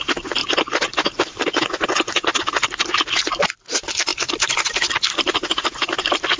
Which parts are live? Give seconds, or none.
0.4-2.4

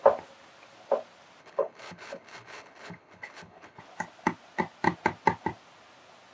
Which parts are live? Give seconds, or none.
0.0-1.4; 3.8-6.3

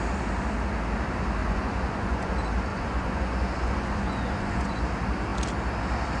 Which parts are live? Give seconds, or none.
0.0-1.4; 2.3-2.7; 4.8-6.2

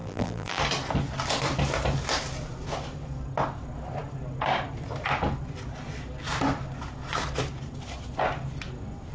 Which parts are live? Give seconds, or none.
0.6-9.1